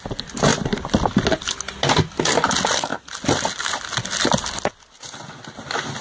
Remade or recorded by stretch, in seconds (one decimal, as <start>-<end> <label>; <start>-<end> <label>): 0.0-6.0 recorded